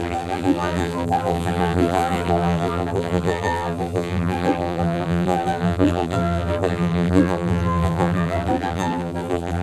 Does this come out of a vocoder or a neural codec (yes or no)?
yes